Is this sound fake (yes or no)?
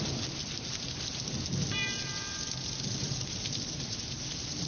no